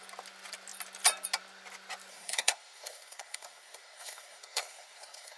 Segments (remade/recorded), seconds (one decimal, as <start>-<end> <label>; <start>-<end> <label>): 0.0-2.1 recorded; 2.1-5.4 remade